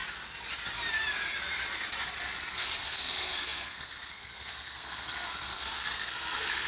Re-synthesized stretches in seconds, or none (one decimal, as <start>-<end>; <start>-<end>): 2.5-6.7